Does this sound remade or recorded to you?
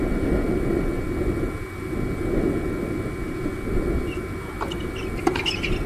recorded